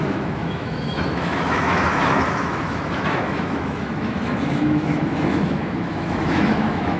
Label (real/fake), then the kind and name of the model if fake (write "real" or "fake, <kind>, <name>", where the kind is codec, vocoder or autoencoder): fake, autoencoder, DAC-VAE